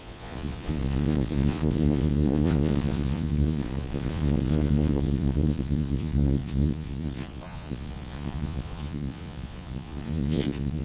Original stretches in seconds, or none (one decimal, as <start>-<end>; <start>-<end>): none